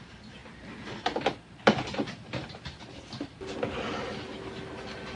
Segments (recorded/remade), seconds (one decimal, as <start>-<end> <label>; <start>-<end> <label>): 0.0-0.4 recorded; 0.4-3.5 remade; 3.5-5.2 recorded